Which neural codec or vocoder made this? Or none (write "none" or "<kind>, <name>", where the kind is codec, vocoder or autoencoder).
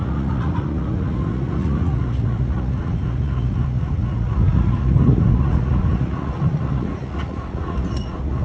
vocoder, Vocos